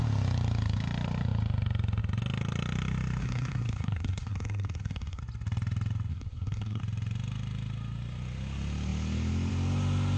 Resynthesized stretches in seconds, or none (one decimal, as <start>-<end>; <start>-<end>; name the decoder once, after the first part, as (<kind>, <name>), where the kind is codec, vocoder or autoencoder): 3.2-5.2 (codec, SNAC); 6.1-6.8

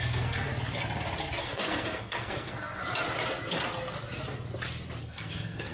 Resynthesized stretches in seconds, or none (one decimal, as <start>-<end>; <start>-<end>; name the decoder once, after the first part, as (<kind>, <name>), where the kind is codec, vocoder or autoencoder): 0.0-0.5 (codec, SNAC); 1.4-2.8; 5.0-5.7

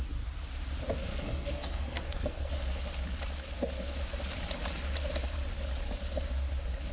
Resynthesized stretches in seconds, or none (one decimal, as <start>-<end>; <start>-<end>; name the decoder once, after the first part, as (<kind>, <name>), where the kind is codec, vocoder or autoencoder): 1.1-2.5 (codec, SNAC)

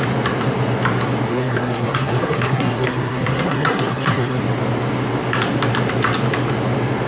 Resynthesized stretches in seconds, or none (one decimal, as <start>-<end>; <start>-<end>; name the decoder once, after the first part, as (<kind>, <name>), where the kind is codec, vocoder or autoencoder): 1.3-4.4 (codec, SNAC)

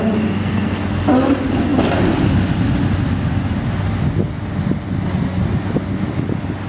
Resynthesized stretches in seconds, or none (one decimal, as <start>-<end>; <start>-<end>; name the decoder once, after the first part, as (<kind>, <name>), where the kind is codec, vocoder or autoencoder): 0.4-1.0 (codec, SNAC)

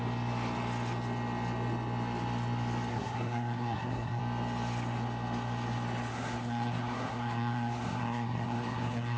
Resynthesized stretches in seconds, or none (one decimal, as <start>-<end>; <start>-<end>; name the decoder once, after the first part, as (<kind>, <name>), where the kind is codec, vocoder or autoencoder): 2.9-4.2 (codec, SNAC); 6.1-9.2

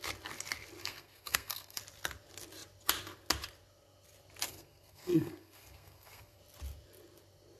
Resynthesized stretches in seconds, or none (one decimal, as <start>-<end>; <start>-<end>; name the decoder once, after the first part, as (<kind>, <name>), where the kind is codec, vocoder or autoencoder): 0.8-1.8 (codec, SNAC); 4.5-6.4